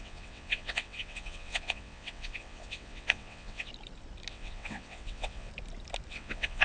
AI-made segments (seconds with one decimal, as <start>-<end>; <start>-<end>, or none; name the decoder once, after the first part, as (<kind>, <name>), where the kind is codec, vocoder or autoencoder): 0.0-3.7 (vocoder, WaveNeXt); 4.3-5.5; 6.1-6.6